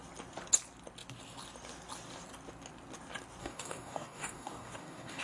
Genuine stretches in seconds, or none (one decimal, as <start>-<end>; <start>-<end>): 0.0-3.4